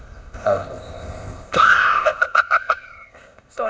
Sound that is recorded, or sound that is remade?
remade